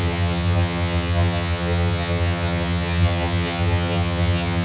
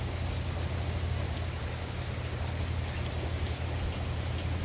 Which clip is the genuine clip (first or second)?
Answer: second